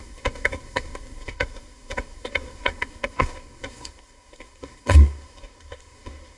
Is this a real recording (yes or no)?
no